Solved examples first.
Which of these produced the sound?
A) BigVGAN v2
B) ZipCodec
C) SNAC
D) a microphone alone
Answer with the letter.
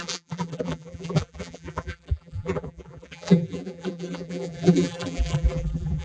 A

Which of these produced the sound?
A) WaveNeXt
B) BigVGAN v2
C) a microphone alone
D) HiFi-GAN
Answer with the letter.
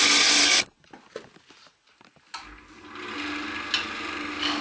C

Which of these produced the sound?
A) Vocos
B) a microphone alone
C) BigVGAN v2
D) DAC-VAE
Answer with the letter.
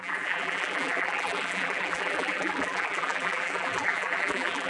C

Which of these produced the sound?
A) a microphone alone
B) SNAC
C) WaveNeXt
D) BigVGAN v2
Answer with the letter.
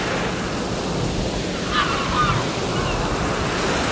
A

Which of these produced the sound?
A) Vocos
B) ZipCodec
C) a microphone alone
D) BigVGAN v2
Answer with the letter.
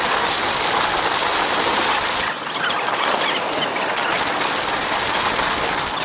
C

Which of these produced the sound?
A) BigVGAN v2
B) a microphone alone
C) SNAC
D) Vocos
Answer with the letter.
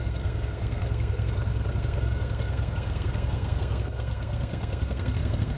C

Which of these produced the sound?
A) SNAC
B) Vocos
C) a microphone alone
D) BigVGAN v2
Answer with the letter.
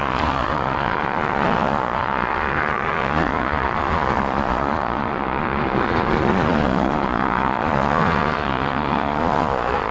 B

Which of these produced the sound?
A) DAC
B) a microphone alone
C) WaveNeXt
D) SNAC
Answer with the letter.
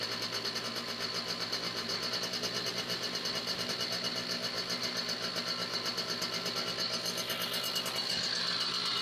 B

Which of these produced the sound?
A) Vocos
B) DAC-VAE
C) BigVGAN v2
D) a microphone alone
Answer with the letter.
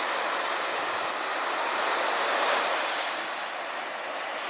D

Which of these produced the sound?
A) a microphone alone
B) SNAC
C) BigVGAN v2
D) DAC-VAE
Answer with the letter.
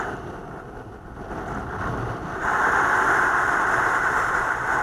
A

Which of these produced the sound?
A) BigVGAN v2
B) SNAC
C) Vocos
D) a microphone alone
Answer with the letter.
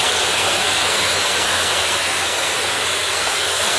B